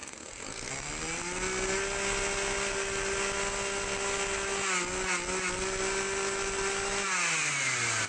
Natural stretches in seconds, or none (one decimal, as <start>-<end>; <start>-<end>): 0.7-8.1